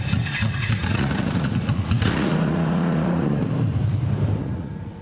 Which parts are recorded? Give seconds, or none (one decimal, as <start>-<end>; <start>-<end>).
3.4-4.4